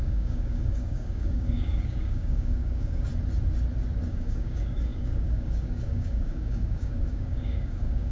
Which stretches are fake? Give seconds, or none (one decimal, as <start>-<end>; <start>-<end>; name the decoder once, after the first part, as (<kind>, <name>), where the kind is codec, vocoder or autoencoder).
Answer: 0.0-3.1 (codec, DAC); 4.0-8.1